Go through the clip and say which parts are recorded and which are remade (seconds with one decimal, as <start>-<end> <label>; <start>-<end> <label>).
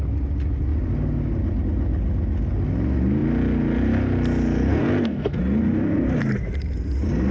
0.0-4.7 recorded; 4.7-5.4 remade; 5.4-7.3 recorded